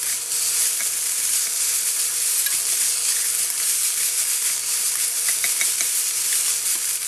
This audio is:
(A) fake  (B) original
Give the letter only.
B